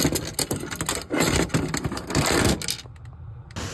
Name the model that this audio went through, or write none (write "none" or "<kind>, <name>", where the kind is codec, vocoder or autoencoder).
none